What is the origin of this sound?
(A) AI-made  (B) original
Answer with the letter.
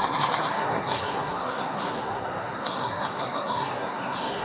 A